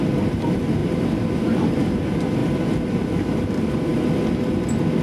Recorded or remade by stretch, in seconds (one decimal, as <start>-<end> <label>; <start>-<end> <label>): 0.0-5.0 recorded